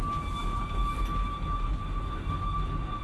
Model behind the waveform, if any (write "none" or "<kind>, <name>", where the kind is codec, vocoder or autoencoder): none